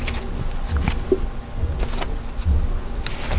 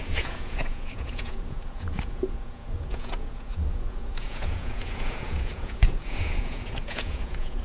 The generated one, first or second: second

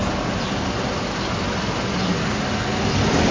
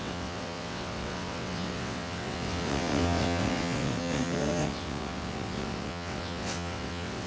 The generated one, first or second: second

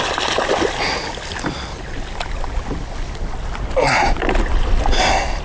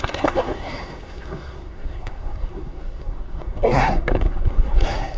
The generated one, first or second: second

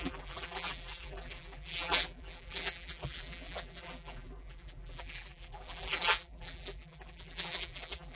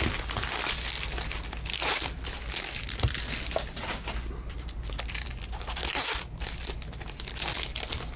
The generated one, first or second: first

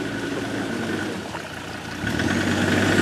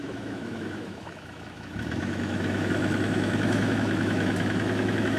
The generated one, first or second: second